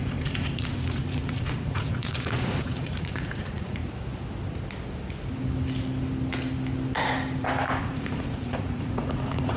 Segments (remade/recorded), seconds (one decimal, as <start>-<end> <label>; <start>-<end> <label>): 0.0-3.8 remade; 3.8-7.8 recorded; 7.8-9.6 remade